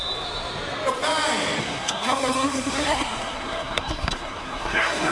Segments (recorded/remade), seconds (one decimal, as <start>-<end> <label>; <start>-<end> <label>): 0.0-1.6 recorded; 1.6-5.1 remade